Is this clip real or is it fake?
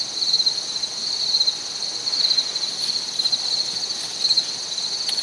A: real